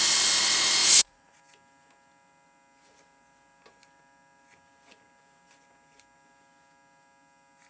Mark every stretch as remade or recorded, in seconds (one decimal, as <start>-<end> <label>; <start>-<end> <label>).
0.0-0.8 recorded; 0.8-1.4 remade; 1.4-7.7 recorded